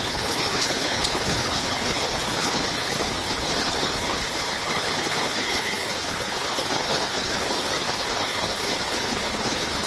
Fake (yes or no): yes